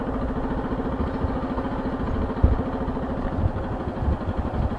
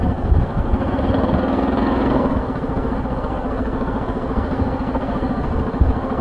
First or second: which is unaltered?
first